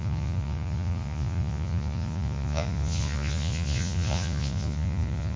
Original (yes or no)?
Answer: no